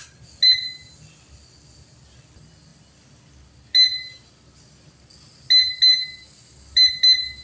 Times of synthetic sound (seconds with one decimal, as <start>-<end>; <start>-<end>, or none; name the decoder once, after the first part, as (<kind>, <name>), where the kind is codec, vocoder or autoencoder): none